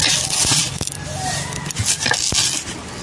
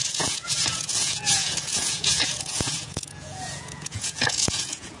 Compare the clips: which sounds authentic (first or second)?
first